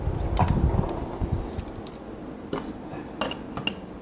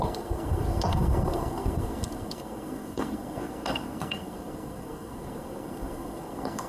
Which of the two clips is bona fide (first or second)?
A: first